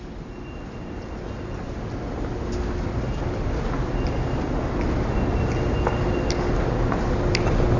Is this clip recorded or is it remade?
recorded